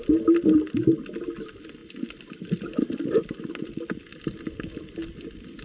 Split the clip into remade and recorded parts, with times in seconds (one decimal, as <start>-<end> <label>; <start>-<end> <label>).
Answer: 0.0-5.6 recorded